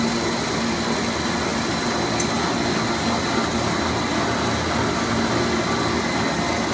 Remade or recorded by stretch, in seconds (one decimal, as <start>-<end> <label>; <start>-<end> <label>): 0.0-6.7 recorded